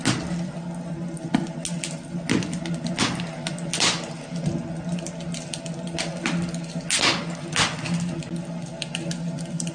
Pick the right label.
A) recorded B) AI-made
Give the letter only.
A